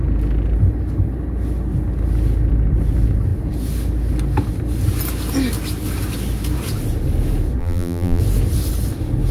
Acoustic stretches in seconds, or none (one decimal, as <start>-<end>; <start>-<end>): 0.0-7.6; 8.2-9.3